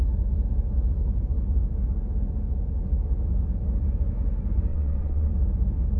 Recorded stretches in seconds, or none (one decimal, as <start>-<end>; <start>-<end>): 0.0-4.7; 5.3-6.0